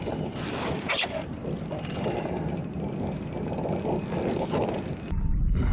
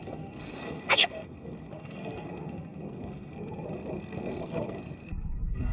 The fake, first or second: second